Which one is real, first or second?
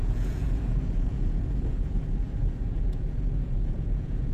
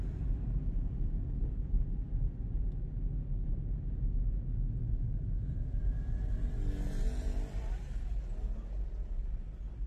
second